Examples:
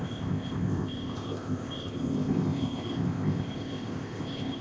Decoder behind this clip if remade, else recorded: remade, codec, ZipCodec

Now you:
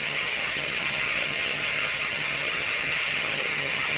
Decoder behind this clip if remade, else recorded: remade, vocoder, HiFi-GAN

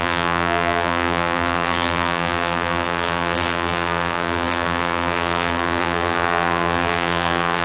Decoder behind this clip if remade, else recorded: remade, vocoder, BigVGAN v2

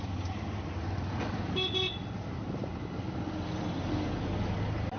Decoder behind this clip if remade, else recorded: recorded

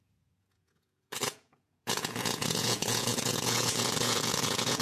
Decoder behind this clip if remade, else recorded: remade, vocoder, Vocos